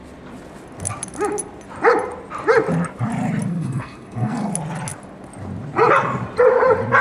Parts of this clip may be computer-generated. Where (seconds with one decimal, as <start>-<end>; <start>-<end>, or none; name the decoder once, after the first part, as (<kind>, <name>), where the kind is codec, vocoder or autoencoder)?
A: 3.5-4.5 (codec, SNAC)